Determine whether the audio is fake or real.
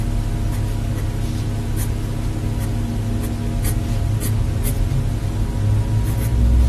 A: real